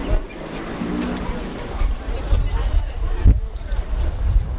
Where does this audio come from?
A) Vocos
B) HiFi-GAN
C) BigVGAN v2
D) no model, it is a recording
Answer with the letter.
D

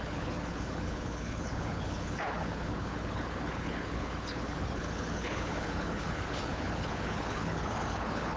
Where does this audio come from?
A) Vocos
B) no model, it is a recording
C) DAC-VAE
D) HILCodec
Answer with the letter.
D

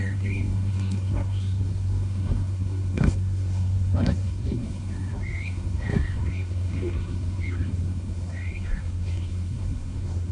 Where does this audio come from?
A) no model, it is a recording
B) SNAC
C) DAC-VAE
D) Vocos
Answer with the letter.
B